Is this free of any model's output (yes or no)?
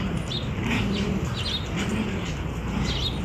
yes